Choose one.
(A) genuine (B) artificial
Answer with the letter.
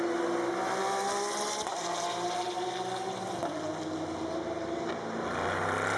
A